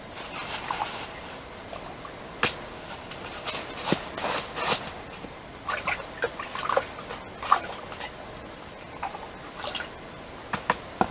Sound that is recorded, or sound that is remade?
recorded